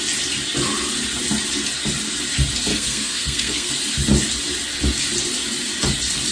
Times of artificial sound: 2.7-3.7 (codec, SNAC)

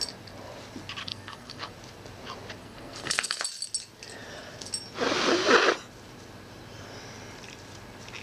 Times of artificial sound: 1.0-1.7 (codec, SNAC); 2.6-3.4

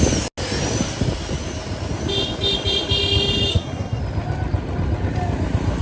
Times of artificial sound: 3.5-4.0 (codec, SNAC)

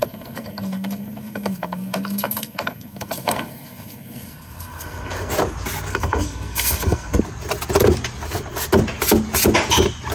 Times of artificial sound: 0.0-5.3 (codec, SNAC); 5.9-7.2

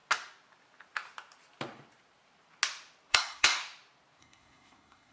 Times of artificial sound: 3.1-3.6 (codec, SNAC); 4.2-5.1